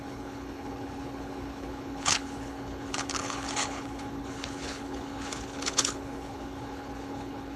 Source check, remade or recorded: remade